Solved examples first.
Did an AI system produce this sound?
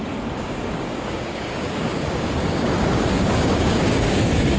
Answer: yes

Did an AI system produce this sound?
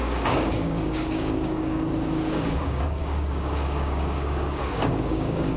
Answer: yes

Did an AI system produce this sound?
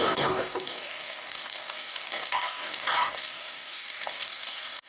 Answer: yes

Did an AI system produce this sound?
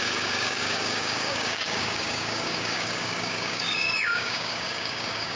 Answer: yes